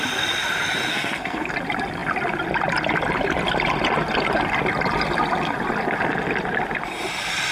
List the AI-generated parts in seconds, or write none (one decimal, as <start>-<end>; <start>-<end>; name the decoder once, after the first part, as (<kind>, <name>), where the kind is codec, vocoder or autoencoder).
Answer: 0.9-1.5 (codec, SNAC)